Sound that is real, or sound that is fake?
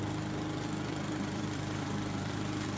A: fake